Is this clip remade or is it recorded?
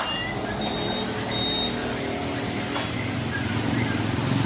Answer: recorded